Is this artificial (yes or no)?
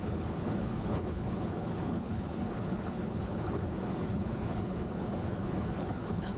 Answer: yes